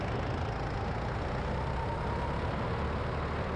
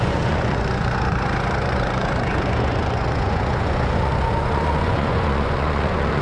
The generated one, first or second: second